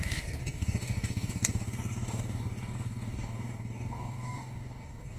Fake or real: fake